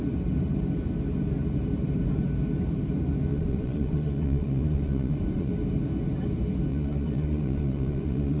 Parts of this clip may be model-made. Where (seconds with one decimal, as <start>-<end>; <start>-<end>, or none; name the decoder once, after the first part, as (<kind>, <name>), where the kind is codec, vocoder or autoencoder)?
3.3-5.5 (vocoder, Vocos); 6.7-8.4